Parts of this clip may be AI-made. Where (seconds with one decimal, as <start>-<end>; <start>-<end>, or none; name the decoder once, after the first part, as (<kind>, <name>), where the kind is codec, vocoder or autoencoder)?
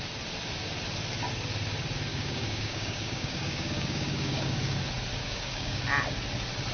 2.1-4.8 (codec, DAC); 5.2-5.8